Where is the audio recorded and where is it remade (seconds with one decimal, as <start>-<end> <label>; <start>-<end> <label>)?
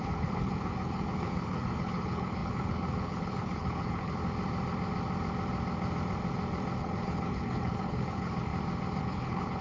0.0-4.2 remade; 4.2-6.8 recorded; 6.8-8.5 remade; 8.5-9.0 recorded; 9.0-9.6 remade